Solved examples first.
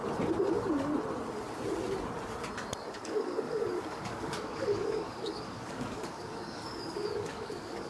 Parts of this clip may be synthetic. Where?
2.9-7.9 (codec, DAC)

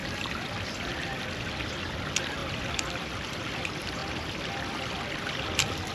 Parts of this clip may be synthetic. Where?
0.0-1.4 (vocoder, BigVGAN v2); 2.4-3.6; 4.0-5.9

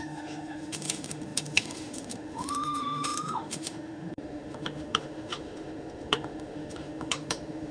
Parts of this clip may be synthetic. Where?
0.0-7.7 (autoencoder, DAC-VAE)

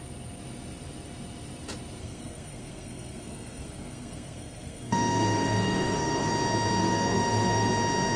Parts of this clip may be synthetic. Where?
2.0-6.3 (codec, SNAC); 6.8-7.7